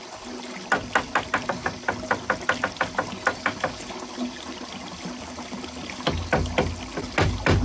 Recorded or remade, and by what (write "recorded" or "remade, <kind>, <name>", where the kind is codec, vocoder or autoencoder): recorded